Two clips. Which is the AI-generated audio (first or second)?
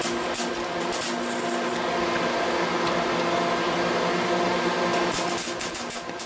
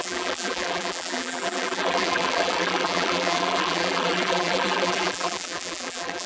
second